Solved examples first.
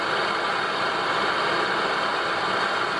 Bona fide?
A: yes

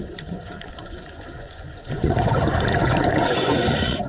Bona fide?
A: no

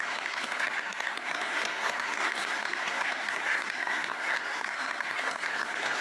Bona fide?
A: no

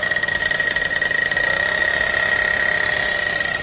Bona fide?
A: yes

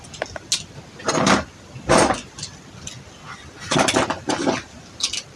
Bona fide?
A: yes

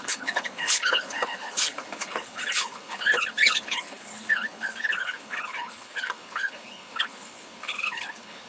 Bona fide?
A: no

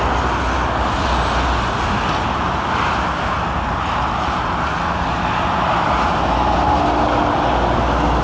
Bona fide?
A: yes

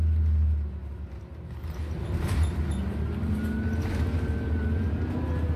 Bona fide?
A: yes